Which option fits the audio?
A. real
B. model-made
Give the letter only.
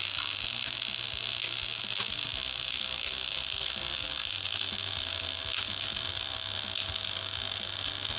A